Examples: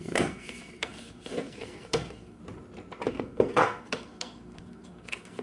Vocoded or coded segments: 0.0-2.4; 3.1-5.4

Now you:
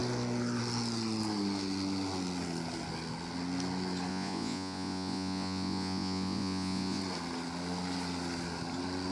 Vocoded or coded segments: 4.1-7.0

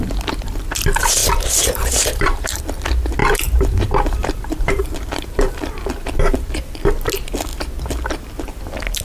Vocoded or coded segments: 1.2-2.6; 3.2-5.9